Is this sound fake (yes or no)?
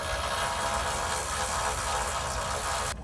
no